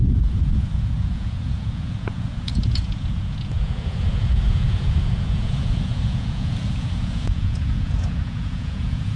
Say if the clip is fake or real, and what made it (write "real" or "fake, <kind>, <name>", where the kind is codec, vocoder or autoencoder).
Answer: fake, vocoder, Vocos